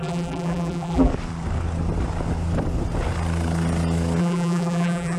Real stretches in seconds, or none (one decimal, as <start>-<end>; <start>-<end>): 1.1-4.2